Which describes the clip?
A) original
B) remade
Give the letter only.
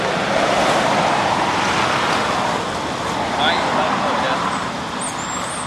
A